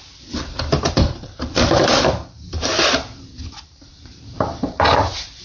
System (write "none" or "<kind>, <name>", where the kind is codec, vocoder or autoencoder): vocoder, BigVGAN v2